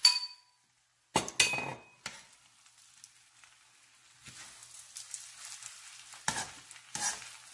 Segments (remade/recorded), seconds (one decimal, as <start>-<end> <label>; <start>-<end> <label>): 0.0-7.5 recorded

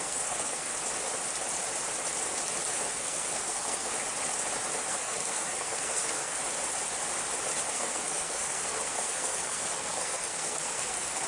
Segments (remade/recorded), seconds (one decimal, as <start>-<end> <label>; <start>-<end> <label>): 0.0-0.7 remade; 0.7-2.7 recorded; 2.7-3.9 remade; 3.9-4.9 recorded; 4.9-6.4 remade; 6.4-7.7 recorded; 7.7-11.3 remade

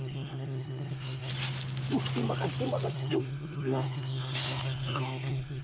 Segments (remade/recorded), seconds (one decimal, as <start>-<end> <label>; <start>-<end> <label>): 0.0-1.3 remade; 1.3-2.9 recorded; 2.9-5.6 remade

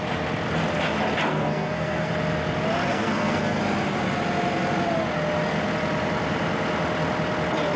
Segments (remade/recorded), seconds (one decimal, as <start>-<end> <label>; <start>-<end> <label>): 0.0-1.3 recorded; 1.3-2.1 remade; 2.1-2.9 recorded; 2.9-3.6 remade; 3.6-7.8 recorded

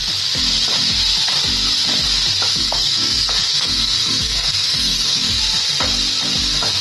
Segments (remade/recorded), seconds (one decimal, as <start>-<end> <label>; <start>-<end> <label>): 0.0-2.5 recorded; 2.5-5.4 remade; 5.4-6.8 recorded

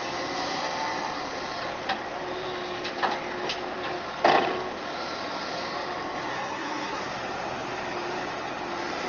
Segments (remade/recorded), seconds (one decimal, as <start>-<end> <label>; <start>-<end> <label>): 0.0-6.3 recorded; 6.3-7.0 remade; 7.0-9.1 recorded